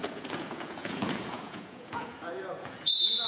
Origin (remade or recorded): remade